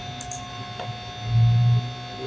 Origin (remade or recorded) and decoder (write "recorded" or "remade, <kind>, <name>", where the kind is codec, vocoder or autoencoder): recorded